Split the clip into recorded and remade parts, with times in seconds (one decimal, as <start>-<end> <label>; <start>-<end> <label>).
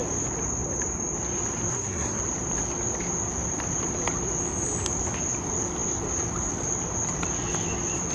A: 0.0-1.7 recorded; 1.7-2.2 remade; 2.2-8.1 recorded